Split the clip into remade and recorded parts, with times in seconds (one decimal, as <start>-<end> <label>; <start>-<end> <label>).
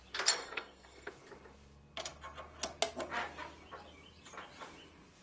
0.0-0.4 recorded; 0.4-1.1 remade; 1.1-5.2 recorded